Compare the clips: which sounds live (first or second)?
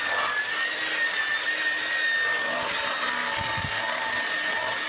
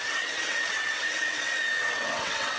first